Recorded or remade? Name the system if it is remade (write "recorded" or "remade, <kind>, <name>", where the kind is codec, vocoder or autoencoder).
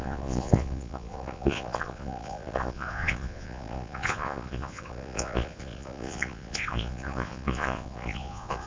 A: remade, vocoder, Vocos